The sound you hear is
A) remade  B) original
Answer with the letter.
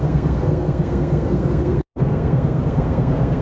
A